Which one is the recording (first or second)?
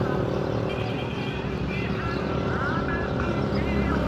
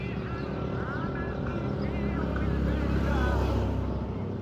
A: second